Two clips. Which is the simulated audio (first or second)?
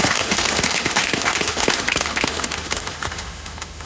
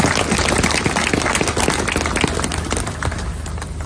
first